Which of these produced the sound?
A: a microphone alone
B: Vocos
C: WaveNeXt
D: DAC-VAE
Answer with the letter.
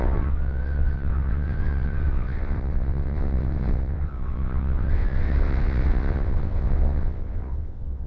C